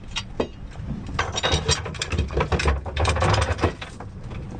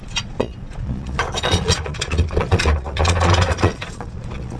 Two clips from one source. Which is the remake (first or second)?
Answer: second